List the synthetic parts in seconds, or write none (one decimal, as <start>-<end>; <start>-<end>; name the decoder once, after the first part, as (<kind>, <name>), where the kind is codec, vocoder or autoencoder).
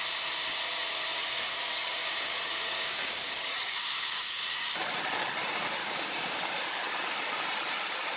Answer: 1.1-4.7 (codec, DAC); 5.8-6.4